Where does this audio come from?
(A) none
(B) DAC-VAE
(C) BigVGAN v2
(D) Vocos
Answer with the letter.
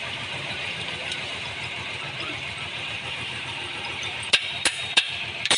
C